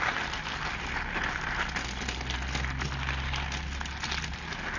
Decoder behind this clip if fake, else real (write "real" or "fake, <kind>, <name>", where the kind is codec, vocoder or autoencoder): real